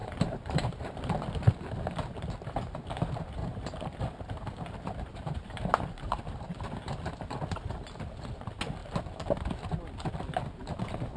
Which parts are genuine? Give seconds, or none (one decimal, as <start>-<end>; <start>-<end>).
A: 1.1-3.4; 6.2-8.8; 9.5-11.2